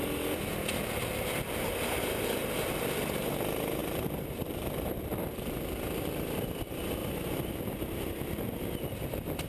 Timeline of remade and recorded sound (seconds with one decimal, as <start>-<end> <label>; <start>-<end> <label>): 0.0-3.8 recorded; 3.8-6.6 remade; 6.6-7.0 recorded; 7.0-7.7 remade; 7.7-9.5 recorded